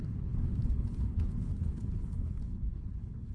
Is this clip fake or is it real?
fake